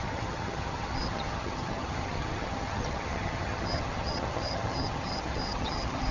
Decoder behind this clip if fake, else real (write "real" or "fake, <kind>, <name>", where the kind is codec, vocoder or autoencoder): fake, vocoder, HiFi-GAN